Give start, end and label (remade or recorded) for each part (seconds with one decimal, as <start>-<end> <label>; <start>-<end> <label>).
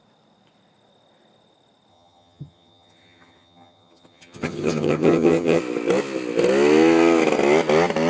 0.0-1.9 recorded; 1.9-5.6 remade; 5.6-8.1 recorded